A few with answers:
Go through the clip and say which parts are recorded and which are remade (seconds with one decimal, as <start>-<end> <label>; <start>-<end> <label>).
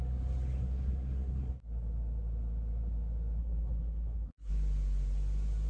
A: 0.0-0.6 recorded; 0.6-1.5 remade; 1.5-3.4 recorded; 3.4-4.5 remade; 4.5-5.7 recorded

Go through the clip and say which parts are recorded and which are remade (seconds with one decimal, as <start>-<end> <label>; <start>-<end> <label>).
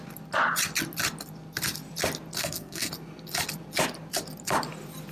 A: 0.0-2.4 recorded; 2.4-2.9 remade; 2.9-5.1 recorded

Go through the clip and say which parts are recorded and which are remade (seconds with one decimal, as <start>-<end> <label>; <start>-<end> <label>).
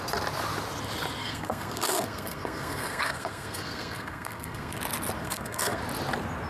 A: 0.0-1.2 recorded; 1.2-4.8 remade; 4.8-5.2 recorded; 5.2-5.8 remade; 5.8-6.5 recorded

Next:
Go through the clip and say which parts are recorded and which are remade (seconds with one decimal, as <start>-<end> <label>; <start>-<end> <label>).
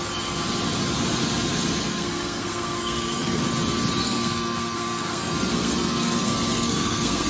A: 0.0-1.9 recorded; 1.9-3.4 remade; 3.4-4.0 recorded; 4.0-7.3 remade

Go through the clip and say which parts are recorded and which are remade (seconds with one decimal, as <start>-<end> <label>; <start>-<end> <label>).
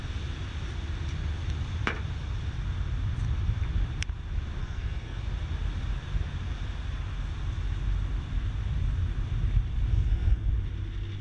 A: 0.0-4.6 recorded; 4.6-5.2 remade; 5.2-9.9 recorded; 9.9-10.5 remade; 10.5-11.2 recorded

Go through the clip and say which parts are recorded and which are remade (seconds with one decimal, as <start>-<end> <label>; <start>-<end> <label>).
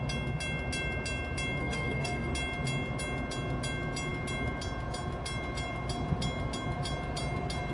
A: 0.0-1.6 recorded; 1.6-2.3 remade; 2.3-7.7 recorded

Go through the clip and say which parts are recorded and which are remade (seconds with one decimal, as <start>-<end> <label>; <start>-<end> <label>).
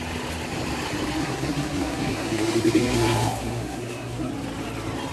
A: 0.0-1.2 recorded; 1.2-4.3 remade; 4.3-5.1 recorded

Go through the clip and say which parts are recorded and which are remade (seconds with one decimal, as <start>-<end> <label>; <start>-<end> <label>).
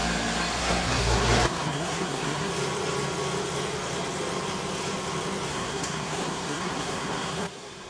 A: 0.0-0.6 recorded; 0.6-2.5 remade; 2.5-5.5 recorded; 5.5-7.9 remade